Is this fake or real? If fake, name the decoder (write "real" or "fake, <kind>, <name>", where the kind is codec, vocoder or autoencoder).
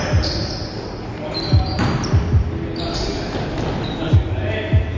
real